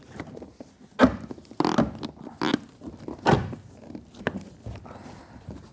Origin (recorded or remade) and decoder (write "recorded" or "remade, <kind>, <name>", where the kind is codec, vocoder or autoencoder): recorded